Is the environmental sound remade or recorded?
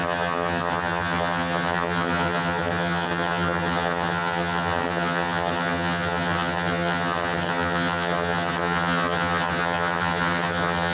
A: remade